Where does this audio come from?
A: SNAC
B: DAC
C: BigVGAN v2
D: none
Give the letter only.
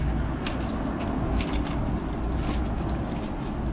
D